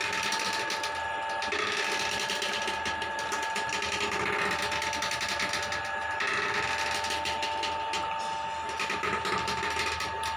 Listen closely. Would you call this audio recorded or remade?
recorded